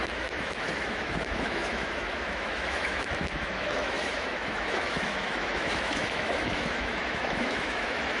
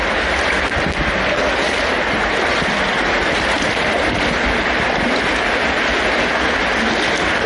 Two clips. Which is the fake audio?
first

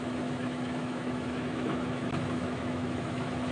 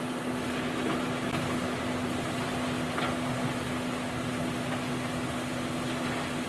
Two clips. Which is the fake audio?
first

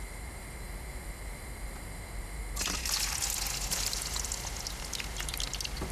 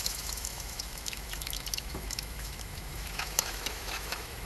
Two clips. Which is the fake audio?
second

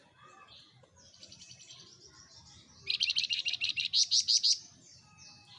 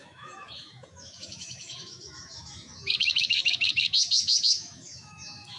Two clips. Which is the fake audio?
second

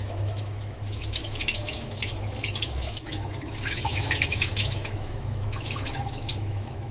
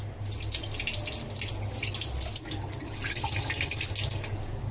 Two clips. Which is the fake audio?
first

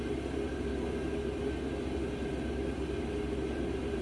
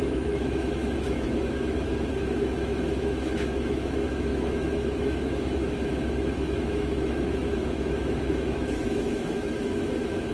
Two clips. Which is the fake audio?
second